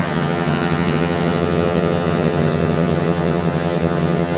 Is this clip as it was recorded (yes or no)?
no